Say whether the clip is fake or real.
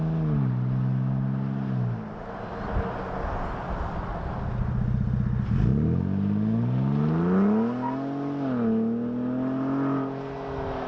real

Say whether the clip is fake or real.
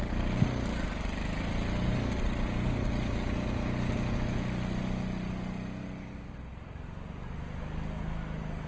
real